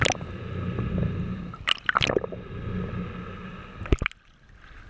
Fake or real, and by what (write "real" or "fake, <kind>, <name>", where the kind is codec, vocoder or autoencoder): real